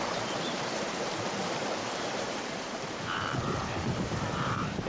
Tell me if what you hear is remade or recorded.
remade